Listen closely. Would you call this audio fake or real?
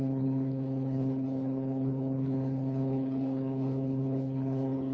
fake